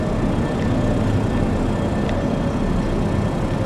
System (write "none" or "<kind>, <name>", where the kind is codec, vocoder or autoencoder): none